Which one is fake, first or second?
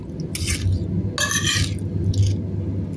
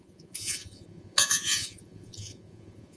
second